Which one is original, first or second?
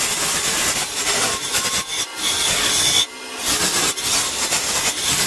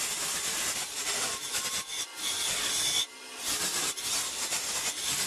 first